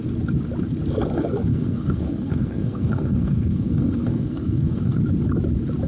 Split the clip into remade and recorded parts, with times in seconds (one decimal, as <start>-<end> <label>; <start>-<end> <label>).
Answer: 0.0-1.5 recorded; 1.5-5.0 remade; 5.0-5.9 recorded